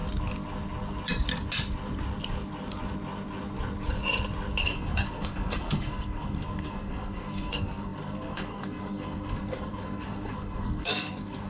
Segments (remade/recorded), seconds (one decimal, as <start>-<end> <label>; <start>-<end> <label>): 0.0-4.6 recorded; 4.6-11.5 remade